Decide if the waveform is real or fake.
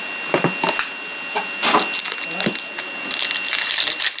real